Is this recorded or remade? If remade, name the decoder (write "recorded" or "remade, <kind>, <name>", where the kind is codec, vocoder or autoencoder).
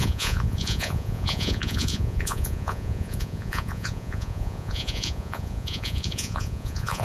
remade, vocoder, Vocos